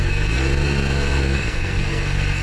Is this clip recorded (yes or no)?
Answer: no